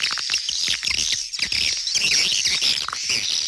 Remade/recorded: recorded